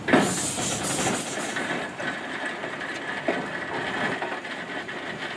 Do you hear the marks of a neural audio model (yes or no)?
no